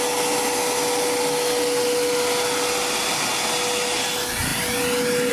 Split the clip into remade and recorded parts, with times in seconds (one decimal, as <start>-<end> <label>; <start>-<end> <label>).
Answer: 0.0-5.3 recorded